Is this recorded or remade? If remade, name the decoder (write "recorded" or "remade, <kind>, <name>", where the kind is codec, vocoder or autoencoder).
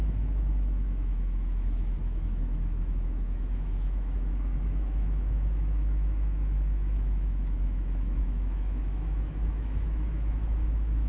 remade, autoencoder, DAC-VAE